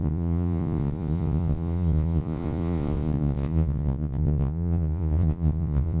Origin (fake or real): fake